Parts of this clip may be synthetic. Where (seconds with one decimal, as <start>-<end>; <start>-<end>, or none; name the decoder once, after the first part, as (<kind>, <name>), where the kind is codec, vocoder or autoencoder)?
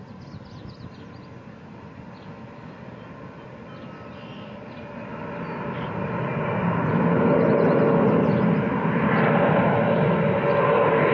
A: none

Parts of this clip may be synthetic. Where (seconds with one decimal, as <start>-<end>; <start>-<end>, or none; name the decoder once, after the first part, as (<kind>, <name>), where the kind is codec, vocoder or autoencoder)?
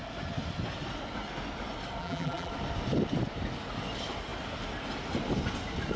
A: 2.0-2.5 (vocoder, BigVGAN v2)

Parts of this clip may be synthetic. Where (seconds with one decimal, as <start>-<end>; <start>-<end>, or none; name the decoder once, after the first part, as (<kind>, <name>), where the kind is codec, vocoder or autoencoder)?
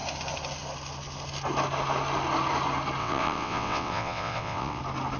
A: 3.0-4.8 (vocoder, WaveNeXt)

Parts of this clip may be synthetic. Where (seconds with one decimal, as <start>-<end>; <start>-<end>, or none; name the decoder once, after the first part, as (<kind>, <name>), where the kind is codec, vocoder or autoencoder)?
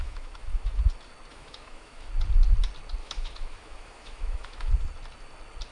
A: 0.0-0.8 (autoencoder, DAC-VAE); 1.3-2.1; 3.0-4.7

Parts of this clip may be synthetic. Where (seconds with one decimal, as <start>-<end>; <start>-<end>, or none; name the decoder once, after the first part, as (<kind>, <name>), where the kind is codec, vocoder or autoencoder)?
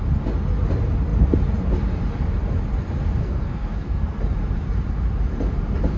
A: 3.2-4.2 (codec, SNAC)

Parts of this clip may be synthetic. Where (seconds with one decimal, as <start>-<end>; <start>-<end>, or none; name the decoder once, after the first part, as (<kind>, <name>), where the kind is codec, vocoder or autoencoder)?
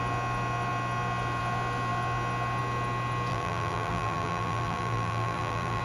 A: 3.3-5.8 (vocoder, BigVGAN v2)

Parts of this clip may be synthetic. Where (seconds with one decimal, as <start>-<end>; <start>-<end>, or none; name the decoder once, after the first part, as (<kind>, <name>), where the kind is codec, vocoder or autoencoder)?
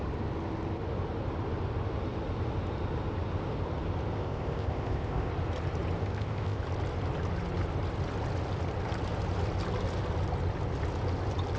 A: 4.1-5.3 (codec, ZipCodec); 6.0-6.6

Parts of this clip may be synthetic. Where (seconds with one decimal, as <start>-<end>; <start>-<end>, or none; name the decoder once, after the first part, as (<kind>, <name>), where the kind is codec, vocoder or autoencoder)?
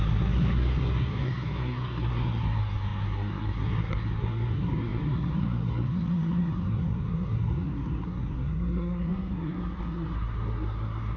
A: 0.0-11.2 (codec, SNAC)